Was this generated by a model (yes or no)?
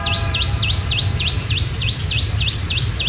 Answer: yes